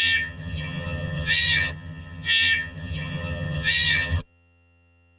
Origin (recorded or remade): remade